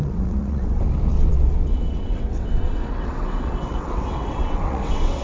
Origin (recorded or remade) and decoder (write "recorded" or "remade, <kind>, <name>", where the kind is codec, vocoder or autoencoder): remade, vocoder, WaveNeXt